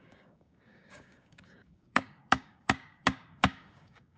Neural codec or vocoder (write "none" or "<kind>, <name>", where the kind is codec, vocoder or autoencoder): codec, DAC